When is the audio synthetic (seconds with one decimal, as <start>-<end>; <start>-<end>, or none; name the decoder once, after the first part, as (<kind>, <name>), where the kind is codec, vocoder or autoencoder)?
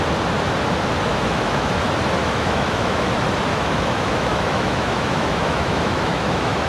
1.1-1.7 (autoencoder, DAC-VAE); 2.2-3.1; 3.5-6.7